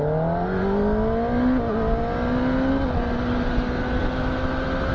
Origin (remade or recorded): recorded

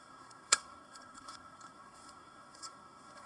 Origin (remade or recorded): remade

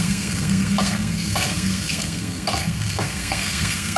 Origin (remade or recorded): remade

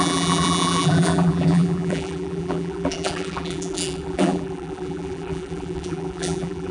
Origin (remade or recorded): remade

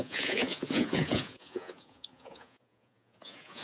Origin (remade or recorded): remade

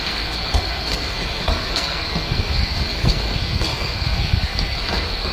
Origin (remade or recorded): remade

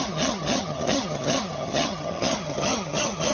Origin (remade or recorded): remade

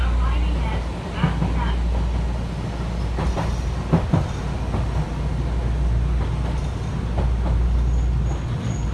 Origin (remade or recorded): recorded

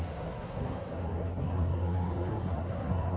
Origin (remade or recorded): remade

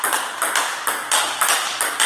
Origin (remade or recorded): recorded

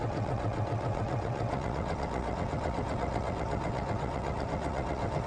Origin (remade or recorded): remade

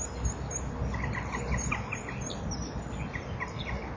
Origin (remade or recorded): recorded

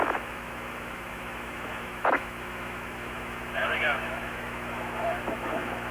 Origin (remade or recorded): remade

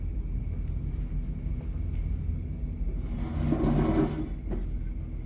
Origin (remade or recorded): recorded